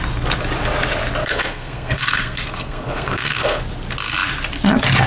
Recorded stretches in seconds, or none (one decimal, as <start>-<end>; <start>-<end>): 0.0-1.2; 3.6-5.1